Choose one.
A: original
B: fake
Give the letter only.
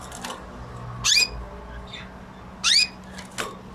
A